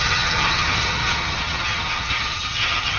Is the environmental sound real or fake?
fake